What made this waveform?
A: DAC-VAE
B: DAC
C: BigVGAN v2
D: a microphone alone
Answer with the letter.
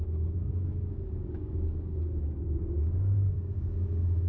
B